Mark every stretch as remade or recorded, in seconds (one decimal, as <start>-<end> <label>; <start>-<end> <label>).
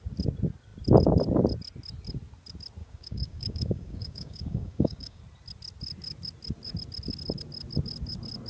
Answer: 0.0-2.8 recorded; 2.8-5.2 remade; 5.2-8.5 recorded